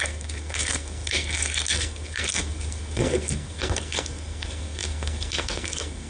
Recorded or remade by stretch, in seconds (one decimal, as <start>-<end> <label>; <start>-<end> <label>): 0.0-6.1 remade